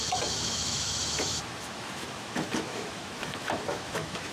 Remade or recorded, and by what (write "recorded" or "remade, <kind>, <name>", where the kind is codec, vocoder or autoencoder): remade, autoencoder, DAC-VAE